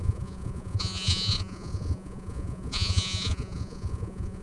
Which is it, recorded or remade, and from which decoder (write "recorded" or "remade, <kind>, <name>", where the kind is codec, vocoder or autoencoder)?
remade, vocoder, Vocos